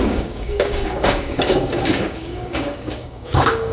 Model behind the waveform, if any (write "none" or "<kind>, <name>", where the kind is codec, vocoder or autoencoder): codec, DAC